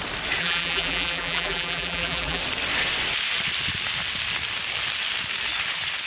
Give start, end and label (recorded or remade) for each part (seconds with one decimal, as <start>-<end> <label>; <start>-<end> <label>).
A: 0.0-0.4 recorded; 0.4-2.4 remade; 2.4-6.1 recorded